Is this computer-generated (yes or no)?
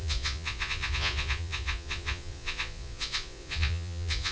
yes